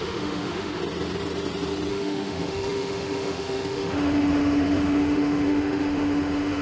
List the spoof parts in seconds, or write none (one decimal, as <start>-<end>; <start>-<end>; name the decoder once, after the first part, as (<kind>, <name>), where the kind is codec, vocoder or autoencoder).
0.0-0.8 (autoencoder, DAC-VAE); 1.9-6.6